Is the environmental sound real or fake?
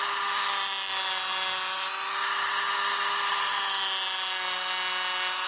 real